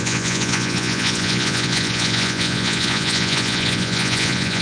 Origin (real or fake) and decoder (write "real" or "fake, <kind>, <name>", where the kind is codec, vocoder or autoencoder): fake, vocoder, Vocos